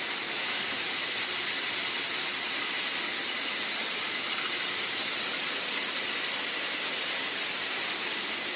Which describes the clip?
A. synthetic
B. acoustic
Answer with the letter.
B